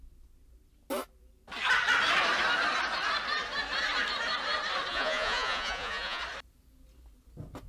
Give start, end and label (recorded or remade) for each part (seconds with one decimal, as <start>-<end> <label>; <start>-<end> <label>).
0.0-4.9 recorded; 4.9-6.2 remade; 6.2-7.7 recorded